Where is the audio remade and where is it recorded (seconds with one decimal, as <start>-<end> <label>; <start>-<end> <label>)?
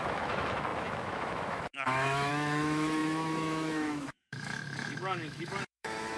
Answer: 0.0-6.2 remade